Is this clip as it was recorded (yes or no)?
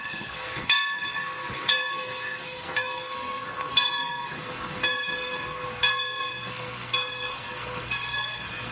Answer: no